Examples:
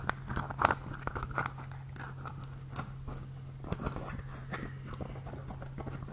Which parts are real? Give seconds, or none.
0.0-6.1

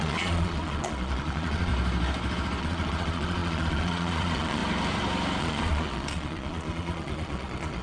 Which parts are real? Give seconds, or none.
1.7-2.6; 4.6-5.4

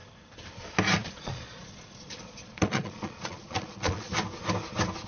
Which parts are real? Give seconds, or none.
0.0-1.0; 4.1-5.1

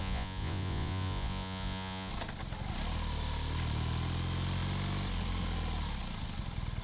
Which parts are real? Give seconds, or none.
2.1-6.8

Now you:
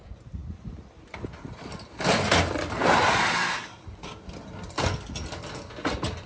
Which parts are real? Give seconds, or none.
0.0-6.3